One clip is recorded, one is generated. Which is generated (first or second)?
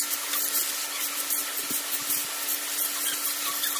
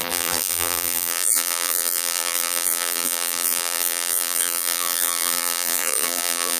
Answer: second